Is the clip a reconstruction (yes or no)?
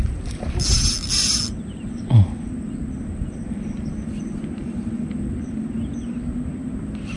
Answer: no